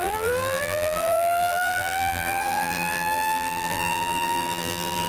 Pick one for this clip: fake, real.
fake